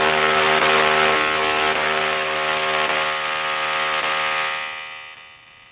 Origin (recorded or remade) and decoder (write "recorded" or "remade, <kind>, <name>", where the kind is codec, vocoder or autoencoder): recorded